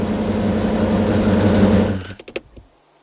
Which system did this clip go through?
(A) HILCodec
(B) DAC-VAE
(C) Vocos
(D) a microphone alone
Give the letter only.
D